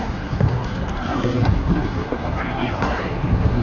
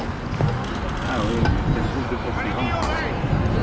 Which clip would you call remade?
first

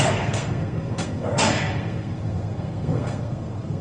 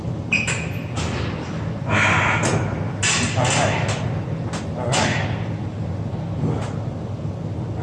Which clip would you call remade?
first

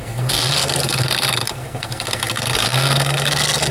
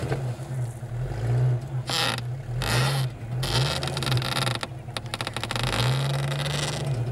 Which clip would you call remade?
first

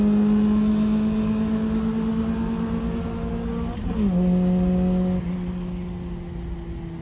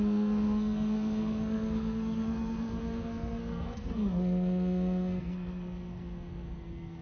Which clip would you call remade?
second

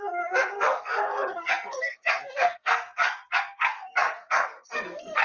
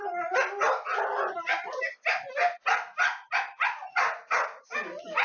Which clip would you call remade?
first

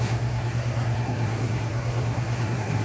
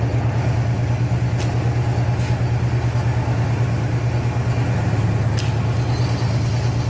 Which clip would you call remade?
first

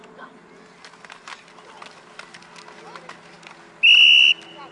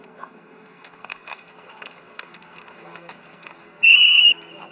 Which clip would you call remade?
second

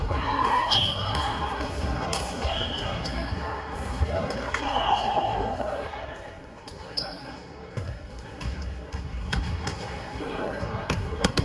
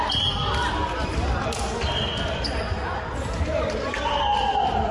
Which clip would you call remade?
first